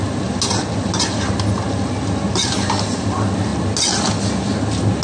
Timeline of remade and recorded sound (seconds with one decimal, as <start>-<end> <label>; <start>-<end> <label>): 0.0-5.0 recorded